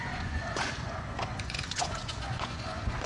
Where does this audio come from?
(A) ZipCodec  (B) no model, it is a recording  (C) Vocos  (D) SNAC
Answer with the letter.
C